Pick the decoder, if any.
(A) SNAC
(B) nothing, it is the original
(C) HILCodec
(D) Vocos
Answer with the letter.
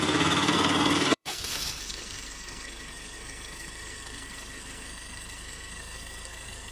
A